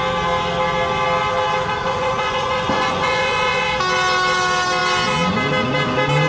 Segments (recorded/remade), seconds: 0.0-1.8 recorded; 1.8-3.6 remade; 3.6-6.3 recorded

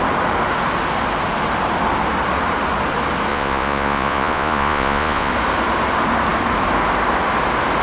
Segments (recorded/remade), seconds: 0.0-3.3 recorded; 3.3-5.3 remade; 5.3-7.8 recorded

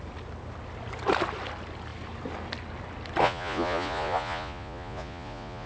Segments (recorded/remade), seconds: 0.0-3.2 recorded; 3.2-5.7 remade